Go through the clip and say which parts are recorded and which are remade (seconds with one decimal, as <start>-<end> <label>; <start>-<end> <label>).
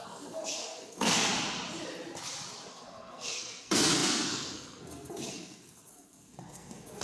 0.0-1.3 remade; 1.3-2.7 recorded; 2.7-7.0 remade